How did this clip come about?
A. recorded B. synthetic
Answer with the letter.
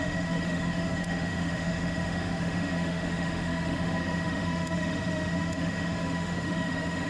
B